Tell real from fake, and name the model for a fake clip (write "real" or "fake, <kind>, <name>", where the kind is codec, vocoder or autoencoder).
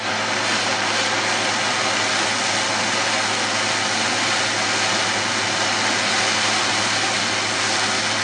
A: real